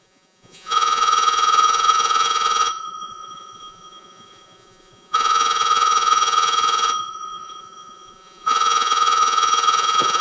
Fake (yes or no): yes